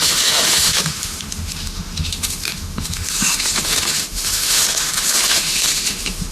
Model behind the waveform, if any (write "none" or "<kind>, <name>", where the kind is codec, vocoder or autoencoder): autoencoder, DAC-VAE